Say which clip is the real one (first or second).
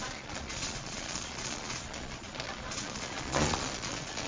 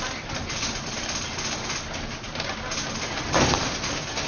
second